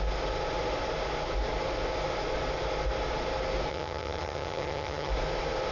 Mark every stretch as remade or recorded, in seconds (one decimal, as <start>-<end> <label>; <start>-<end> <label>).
0.0-3.7 recorded; 3.7-5.1 remade; 5.1-5.7 recorded